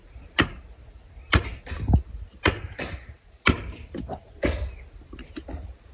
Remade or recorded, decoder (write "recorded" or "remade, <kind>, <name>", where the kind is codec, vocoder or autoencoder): recorded